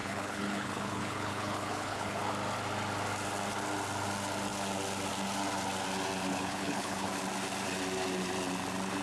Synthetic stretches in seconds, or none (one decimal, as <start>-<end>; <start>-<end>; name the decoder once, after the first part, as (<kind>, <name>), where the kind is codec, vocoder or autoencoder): 0.0-2.3 (codec, HILCodec); 6.3-7.1